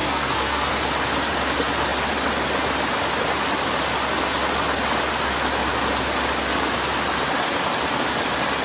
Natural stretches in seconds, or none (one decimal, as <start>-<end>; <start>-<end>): 0.7-8.6